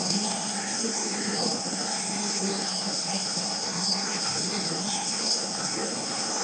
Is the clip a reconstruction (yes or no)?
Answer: yes